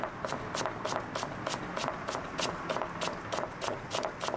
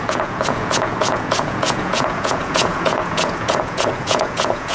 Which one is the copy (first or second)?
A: second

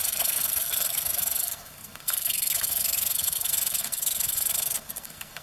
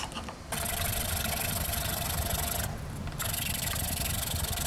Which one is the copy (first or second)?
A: first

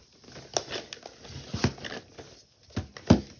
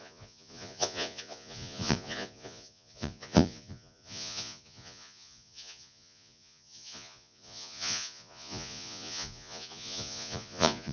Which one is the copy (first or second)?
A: second